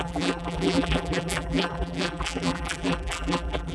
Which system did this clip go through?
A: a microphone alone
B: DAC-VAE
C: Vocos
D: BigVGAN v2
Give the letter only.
D